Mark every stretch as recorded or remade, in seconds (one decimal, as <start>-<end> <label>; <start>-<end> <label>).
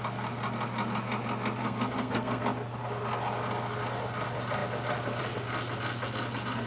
0.0-1.6 recorded; 1.6-2.4 remade; 2.4-6.7 recorded